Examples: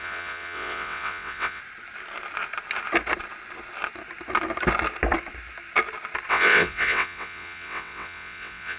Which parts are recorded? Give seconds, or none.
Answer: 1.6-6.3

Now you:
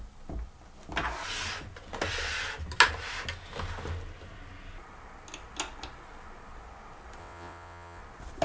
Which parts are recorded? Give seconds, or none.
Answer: 0.0-7.2; 8.0-8.4

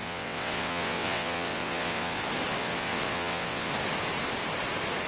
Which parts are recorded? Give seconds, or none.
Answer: 2.2-2.6; 3.7-5.1

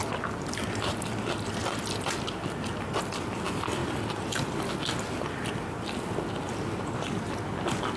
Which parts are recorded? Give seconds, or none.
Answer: 0.0-8.0

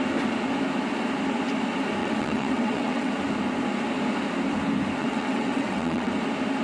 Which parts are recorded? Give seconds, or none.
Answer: 0.0-2.0; 3.1-5.0; 6.1-6.6

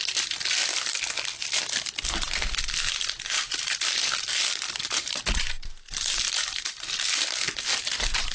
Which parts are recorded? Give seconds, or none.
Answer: 0.0-8.3

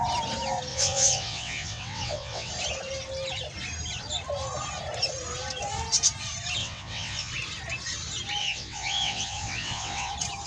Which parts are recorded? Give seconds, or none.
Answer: 0.0-0.7; 2.5-6.6; 7.3-8.4; 10.1-10.5